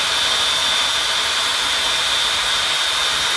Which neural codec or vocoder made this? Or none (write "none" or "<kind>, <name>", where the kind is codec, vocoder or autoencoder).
none